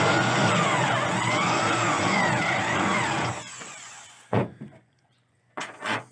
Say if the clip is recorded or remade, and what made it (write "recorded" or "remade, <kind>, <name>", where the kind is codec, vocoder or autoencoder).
remade, vocoder, Vocos